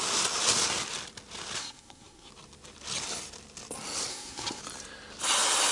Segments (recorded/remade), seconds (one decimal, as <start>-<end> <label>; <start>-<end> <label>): 0.0-1.6 recorded; 1.6-2.3 remade; 2.3-4.1 recorded; 4.1-4.6 remade; 4.6-5.7 recorded